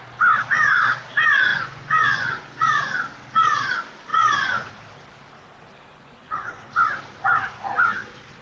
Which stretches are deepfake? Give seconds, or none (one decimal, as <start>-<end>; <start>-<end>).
1.5-2.4; 4.1-4.7; 5.9-6.6